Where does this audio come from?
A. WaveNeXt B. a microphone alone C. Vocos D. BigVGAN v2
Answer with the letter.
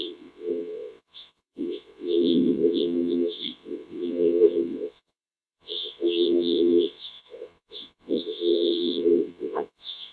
A